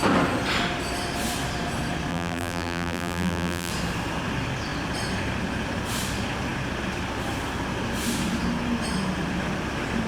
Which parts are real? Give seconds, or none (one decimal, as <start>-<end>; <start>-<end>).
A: 0.0-2.1; 3.7-10.1